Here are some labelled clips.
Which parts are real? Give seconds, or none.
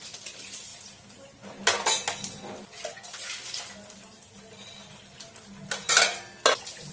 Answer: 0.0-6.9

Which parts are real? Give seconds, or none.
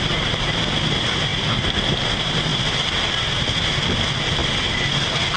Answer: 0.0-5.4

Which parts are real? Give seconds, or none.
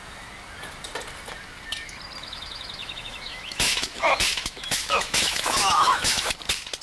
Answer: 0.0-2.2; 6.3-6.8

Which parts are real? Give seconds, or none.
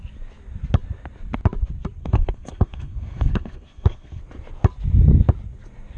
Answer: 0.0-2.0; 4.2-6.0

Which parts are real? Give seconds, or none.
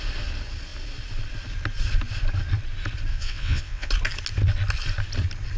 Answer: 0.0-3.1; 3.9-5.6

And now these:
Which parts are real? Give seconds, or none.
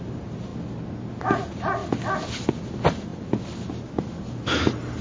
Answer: 0.0-5.0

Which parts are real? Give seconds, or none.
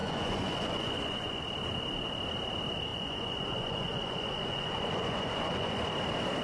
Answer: 1.4-2.9; 5.8-6.4